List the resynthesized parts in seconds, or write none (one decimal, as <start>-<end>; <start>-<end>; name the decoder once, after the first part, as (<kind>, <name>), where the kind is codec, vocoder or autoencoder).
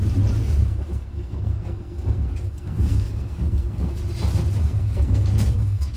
0.4-4.0 (codec, SNAC); 4.6-6.0